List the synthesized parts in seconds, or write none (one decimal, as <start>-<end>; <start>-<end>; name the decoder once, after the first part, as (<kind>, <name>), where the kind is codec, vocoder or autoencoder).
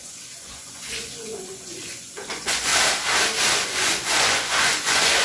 0.0-2.7 (vocoder, Vocos); 3.5-5.2